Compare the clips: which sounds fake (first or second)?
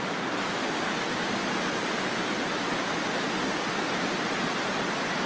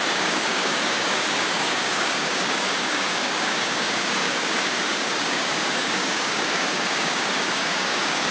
second